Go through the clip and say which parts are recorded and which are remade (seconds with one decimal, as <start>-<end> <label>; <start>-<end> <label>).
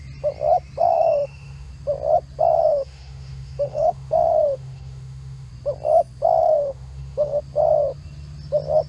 0.0-0.8 recorded; 0.8-1.7 remade; 1.7-2.7 recorded; 2.7-5.5 remade; 5.5-6.4 recorded; 6.4-7.4 remade; 7.4-8.9 recorded